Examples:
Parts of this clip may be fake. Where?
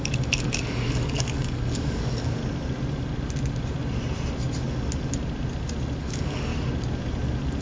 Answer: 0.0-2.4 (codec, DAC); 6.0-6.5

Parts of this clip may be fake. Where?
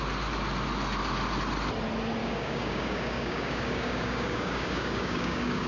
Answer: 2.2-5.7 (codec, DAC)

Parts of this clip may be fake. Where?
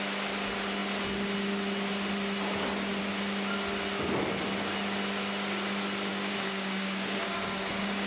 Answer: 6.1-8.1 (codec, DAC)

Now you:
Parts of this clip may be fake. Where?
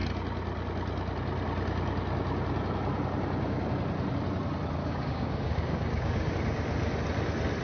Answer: 4.8-6.3 (codec, DAC)